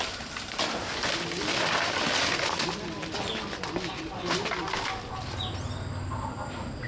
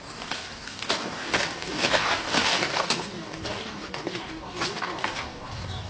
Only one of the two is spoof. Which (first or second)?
second